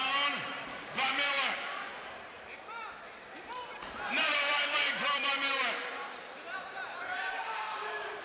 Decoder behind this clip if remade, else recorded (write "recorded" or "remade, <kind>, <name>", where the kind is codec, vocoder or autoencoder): remade, vocoder, BigVGAN v2